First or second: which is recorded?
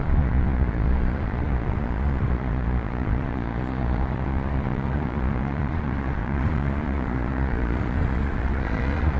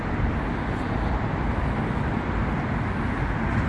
second